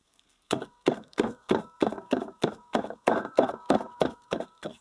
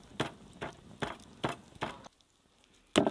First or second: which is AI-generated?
first